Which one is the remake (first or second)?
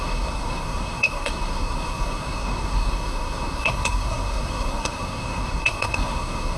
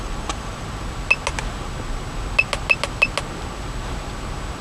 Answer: first